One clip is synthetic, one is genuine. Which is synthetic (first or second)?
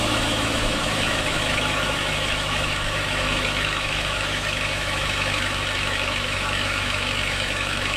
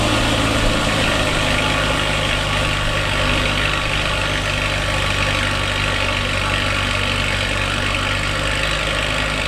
first